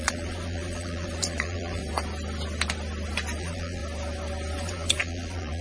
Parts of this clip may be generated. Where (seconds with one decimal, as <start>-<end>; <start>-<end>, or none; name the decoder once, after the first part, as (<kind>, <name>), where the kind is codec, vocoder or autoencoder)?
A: 0.0-1.8 (vocoder, Vocos); 3.4-3.8; 4.6-5.6